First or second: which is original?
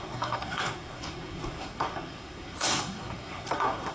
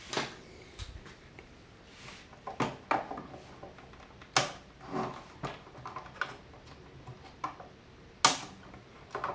second